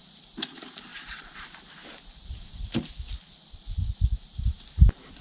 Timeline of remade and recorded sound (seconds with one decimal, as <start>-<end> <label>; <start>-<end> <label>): 0.0-5.2 recorded